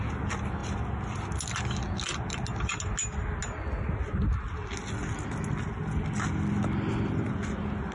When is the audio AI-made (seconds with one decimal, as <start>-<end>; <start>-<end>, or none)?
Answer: none